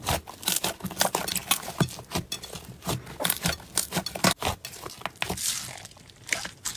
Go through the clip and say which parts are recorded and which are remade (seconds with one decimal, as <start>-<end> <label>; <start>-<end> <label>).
0.0-6.8 recorded